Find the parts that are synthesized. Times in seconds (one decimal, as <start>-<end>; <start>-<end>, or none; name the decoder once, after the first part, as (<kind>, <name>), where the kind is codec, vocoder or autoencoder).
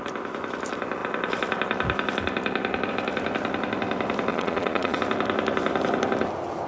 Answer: 4.3-5.0 (vocoder, Vocos)